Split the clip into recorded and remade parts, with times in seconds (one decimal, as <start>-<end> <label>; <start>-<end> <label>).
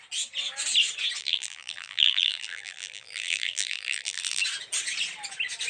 0.0-1.2 recorded; 1.2-4.4 remade; 4.4-5.7 recorded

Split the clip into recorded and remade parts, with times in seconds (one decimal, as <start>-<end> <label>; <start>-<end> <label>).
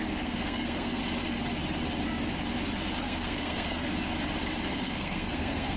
0.0-1.0 remade; 1.0-3.0 recorded; 3.0-3.9 remade; 3.9-4.7 recorded; 4.7-5.8 remade